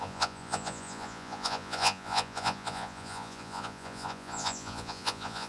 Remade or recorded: remade